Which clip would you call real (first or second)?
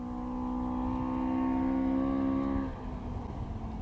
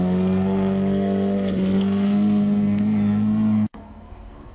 first